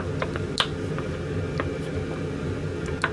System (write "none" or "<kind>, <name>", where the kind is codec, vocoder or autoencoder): none